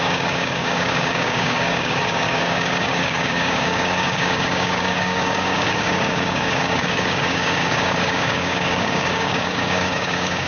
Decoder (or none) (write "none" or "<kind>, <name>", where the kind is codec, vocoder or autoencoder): codec, DAC